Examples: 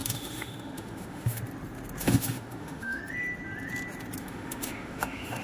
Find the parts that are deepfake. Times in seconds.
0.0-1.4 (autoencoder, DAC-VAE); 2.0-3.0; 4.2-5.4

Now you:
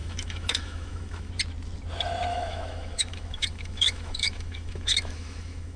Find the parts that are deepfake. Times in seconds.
0.0-1.3 (autoencoder, DAC-VAE); 2.3-5.8

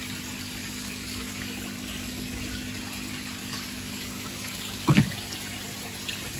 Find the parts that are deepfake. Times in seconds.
0.6-2.4 (codec, DAC); 3.4-5.1

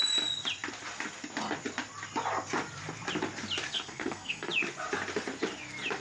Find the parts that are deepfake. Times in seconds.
3.7-4.5 (codec, SNAC)

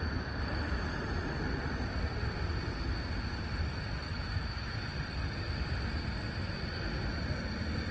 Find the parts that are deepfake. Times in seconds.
3.7-4.6 (autoencoder, DAC-VAE)

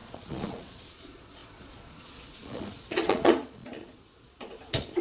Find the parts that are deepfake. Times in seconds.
0.0-5.0 (vocoder, Vocos)